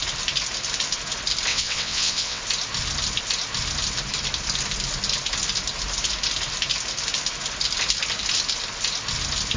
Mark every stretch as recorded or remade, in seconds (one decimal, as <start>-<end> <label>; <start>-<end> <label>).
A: 0.0-1.5 recorded; 1.5-2.4 remade; 2.4-9.6 recorded